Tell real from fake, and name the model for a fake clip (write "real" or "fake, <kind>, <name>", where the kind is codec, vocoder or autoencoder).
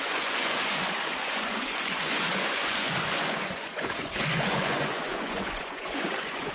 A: fake, vocoder, Vocos